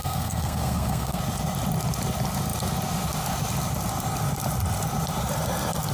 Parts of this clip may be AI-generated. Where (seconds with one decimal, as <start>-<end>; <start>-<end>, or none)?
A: 0.0-1.2